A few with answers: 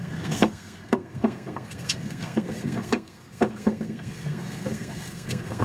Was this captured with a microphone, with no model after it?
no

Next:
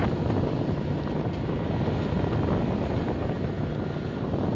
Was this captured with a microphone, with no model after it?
yes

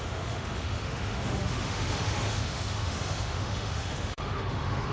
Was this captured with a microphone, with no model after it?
no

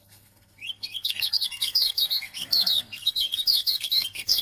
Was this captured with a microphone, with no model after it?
no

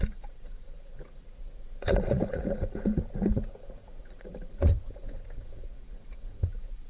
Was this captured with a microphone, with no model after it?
no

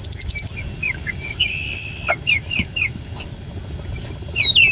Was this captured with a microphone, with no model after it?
yes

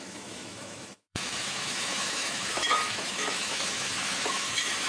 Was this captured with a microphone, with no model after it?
no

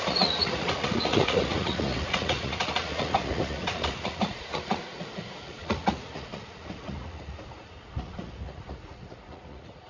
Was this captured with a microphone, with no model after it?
no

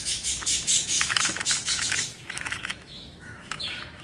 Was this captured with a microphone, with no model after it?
no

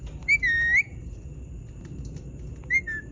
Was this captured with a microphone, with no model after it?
yes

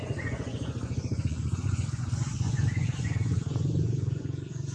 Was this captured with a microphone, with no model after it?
no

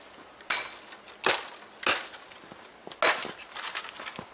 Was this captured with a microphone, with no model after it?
yes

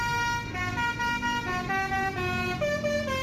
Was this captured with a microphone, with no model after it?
yes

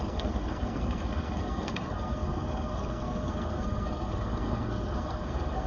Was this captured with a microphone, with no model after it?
no